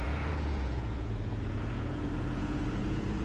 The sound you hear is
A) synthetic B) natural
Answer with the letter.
A